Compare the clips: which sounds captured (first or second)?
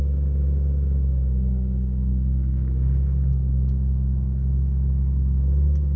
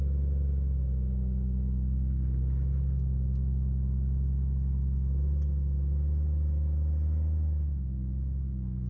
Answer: second